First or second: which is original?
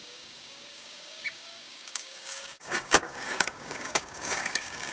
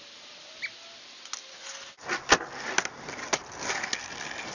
second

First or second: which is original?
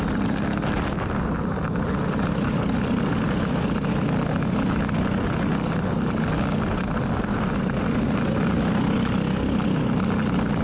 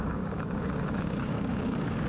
first